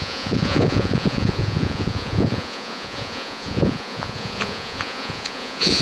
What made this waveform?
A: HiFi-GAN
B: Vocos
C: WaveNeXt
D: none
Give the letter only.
B